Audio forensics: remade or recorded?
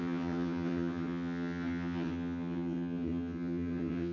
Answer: remade